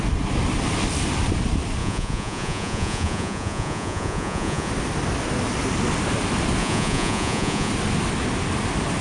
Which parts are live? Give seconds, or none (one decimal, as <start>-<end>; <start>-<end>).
0.0-1.8; 4.7-6.6; 7.7-9.0